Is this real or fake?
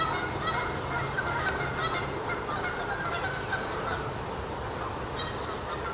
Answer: real